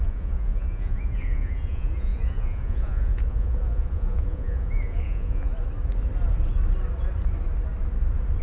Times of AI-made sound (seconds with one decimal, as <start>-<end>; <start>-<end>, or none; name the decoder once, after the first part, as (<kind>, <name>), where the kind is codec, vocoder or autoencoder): 0.0-5.5 (vocoder, Vocos)